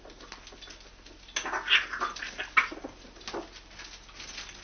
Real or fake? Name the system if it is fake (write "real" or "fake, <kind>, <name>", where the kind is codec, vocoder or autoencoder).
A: real